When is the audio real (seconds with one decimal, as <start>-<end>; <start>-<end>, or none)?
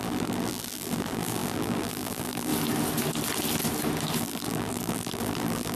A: 2.5-4.2